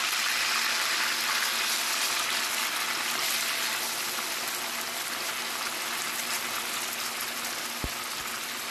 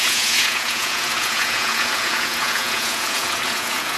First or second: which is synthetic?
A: second